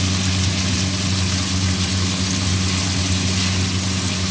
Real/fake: real